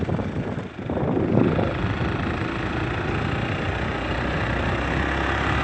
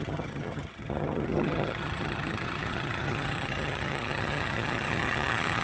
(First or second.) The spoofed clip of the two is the second